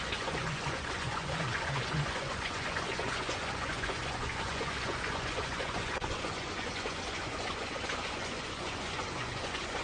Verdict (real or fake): fake